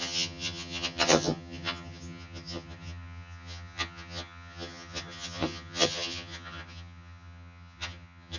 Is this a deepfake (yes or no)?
yes